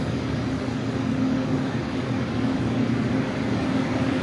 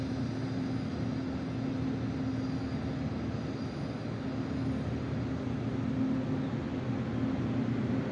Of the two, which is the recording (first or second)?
second